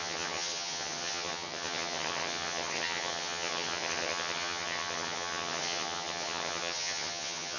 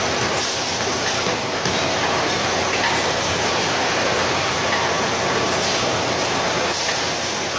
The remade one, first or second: first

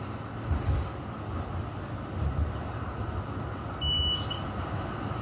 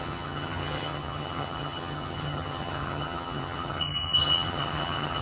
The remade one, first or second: second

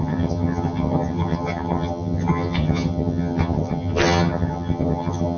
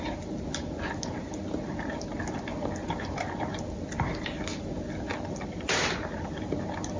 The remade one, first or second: first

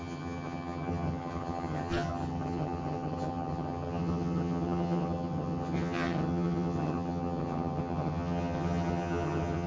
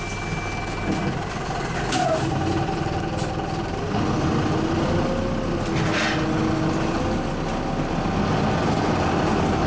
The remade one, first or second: first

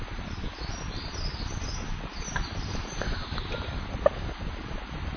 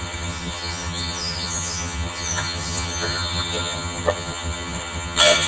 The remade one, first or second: second